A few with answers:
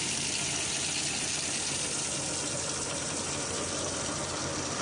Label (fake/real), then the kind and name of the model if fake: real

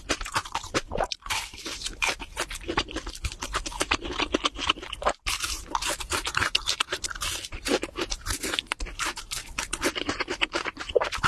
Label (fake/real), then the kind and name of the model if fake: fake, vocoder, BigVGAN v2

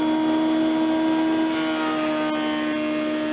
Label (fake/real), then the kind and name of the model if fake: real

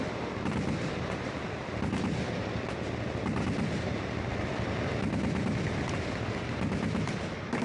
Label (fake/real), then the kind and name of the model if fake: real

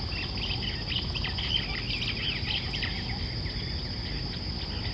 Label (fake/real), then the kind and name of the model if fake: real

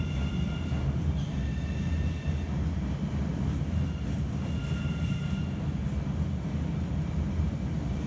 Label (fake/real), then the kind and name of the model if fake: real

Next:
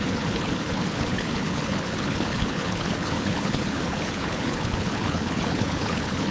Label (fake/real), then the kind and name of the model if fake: fake, codec, HILCodec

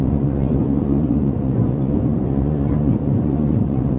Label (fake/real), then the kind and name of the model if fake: fake, vocoder, Vocos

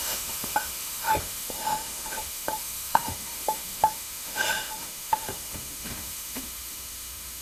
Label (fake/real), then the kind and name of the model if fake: fake, autoencoder, DAC-VAE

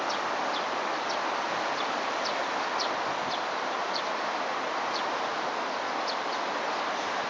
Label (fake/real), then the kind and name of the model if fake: real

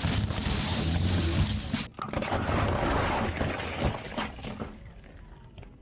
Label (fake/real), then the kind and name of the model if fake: real